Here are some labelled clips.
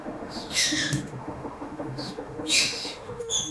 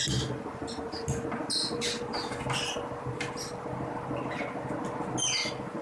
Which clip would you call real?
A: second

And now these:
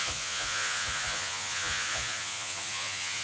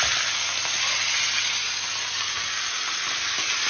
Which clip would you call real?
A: second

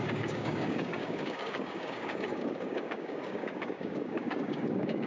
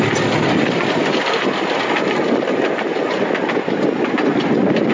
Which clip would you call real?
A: second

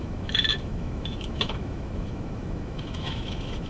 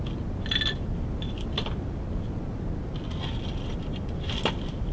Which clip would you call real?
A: second